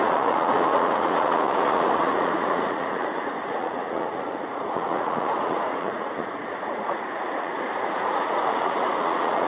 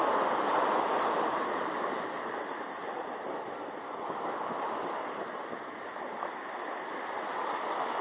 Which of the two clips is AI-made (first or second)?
first